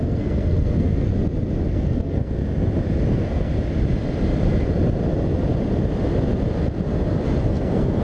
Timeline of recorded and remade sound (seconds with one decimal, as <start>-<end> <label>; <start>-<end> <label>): 0.0-1.1 remade; 1.1-1.7 recorded; 1.7-2.4 remade; 2.4-3.1 recorded; 3.1-3.5 remade; 3.5-7.4 recorded; 7.4-8.0 remade